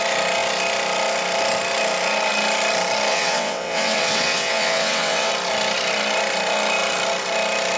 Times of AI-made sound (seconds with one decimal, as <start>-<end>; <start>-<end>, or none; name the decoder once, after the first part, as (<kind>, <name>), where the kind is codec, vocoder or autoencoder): 3.1-5.3 (vocoder, WaveNeXt)